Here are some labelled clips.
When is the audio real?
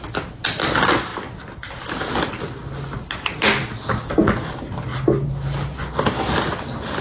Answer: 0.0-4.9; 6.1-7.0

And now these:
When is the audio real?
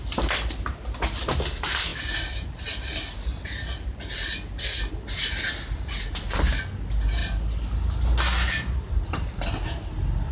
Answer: 0.0-10.3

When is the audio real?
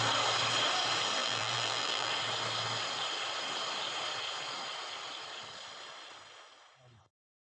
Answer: 0.0-1.2; 2.1-7.5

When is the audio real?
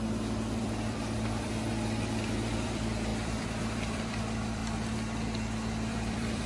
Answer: 1.7-2.5; 4.6-5.9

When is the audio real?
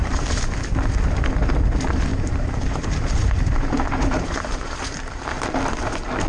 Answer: 0.5-2.1; 5.2-6.3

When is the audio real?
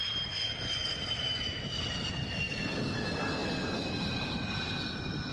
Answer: 0.0-5.3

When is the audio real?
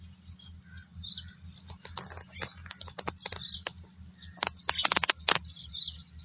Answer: 0.0-0.9; 1.7-2.5; 5.7-6.2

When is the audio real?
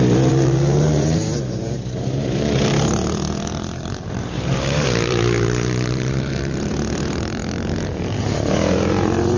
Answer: 7.4-7.9